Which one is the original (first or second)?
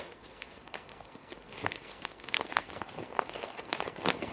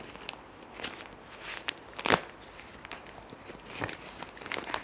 second